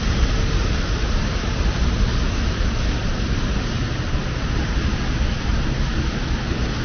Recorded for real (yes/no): yes